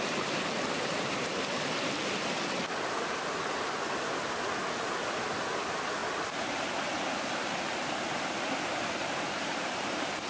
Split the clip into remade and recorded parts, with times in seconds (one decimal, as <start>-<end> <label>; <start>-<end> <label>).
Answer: 0.0-1.3 remade; 1.3-5.2 recorded; 5.2-6.0 remade; 6.0-9.2 recorded; 9.2-10.3 remade